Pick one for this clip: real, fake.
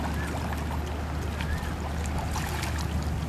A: real